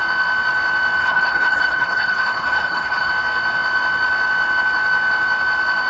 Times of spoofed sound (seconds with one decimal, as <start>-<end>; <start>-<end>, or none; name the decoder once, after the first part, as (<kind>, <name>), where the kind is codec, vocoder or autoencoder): 1.0-3.1 (codec, HILCodec)